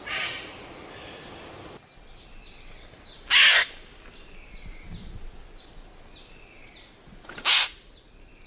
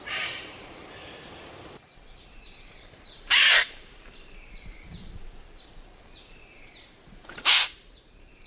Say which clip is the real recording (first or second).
first